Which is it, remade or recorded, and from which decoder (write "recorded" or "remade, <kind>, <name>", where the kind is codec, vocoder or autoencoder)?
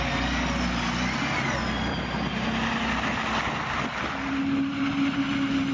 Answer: recorded